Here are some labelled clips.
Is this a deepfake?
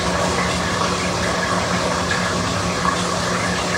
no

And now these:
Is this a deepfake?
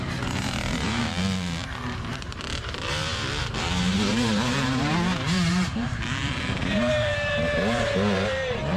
yes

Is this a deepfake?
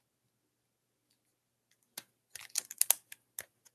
no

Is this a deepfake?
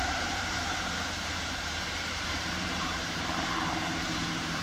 yes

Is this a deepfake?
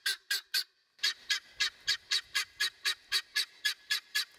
no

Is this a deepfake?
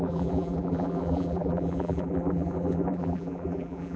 yes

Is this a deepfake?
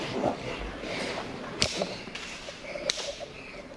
yes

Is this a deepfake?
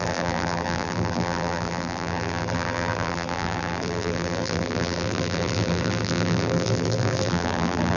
yes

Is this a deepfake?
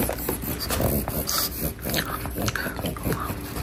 no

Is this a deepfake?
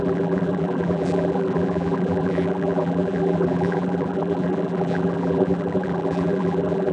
yes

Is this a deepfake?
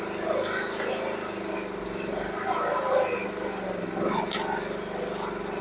no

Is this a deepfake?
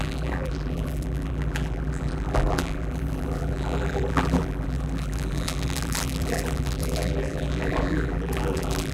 yes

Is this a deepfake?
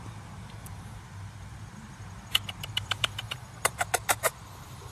yes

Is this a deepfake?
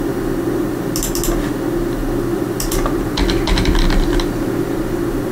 no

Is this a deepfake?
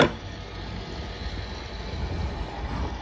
no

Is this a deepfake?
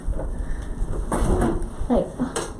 yes